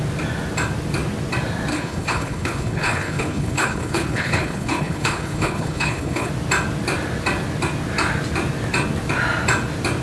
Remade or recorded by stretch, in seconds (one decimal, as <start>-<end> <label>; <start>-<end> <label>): 0.0-1.7 recorded; 1.7-6.3 remade; 6.3-10.0 recorded

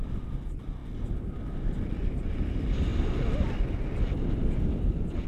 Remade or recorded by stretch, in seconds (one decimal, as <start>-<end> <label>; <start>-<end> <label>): 0.0-5.3 recorded

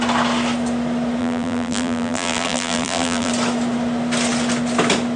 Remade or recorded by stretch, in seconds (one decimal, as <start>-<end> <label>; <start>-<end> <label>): 0.0-1.2 recorded; 1.2-3.3 remade; 3.3-5.2 recorded